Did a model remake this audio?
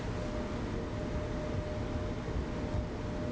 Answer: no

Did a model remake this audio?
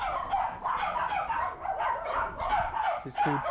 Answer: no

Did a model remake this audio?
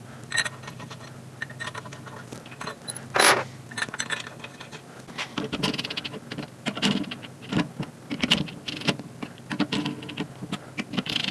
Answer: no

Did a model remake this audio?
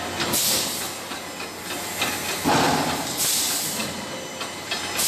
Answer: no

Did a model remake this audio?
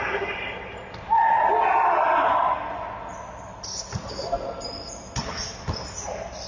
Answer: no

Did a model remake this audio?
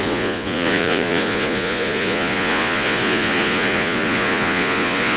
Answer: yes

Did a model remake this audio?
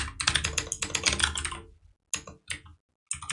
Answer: no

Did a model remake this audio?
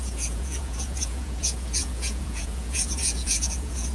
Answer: yes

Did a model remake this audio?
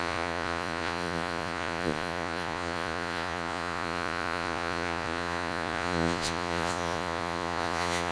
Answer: yes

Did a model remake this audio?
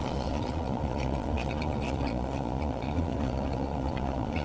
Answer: yes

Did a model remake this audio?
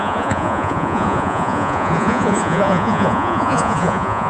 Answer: yes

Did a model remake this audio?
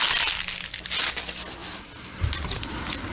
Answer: no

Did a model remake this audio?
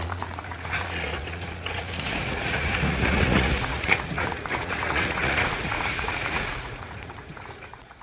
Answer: yes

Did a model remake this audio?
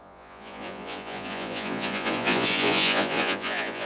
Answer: yes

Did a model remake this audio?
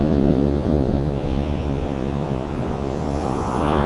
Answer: yes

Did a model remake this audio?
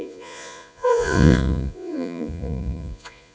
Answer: yes